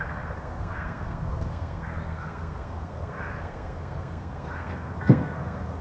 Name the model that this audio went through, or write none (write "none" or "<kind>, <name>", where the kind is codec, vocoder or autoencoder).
codec, SNAC